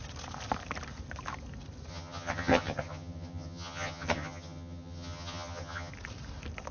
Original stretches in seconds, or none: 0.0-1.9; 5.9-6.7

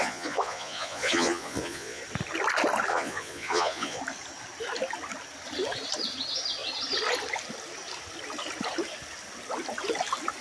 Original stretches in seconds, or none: 2.0-2.9; 4.0-10.4

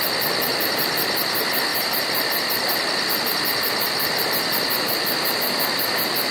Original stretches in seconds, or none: 0.0-6.3